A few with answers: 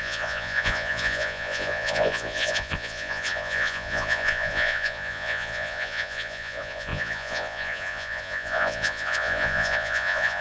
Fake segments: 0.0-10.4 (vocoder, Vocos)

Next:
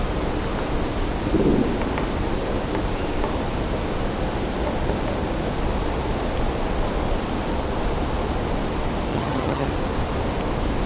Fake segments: 9.1-9.7 (vocoder, HiFi-GAN)